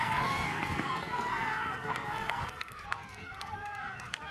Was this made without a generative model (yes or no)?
no